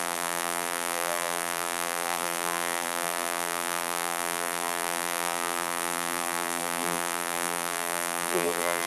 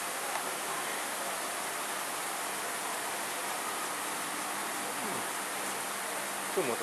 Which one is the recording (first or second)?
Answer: second